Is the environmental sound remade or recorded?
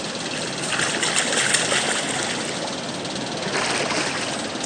recorded